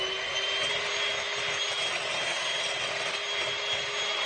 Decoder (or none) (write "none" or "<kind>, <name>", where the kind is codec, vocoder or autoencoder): none